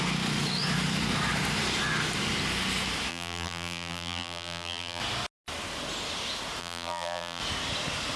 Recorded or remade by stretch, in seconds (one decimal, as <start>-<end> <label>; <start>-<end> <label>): 0.0-3.1 recorded; 3.1-5.0 remade; 5.0-6.6 recorded; 6.6-7.4 remade; 7.4-8.2 recorded